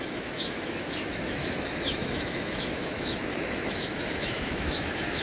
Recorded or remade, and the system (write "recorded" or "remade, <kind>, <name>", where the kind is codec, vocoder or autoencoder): remade, autoencoder, DAC-VAE